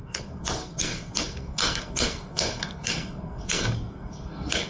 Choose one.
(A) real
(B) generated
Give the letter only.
B